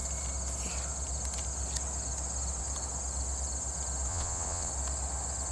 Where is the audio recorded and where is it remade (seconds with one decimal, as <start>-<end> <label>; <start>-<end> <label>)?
0.0-4.1 recorded; 4.1-4.7 remade; 4.7-5.5 recorded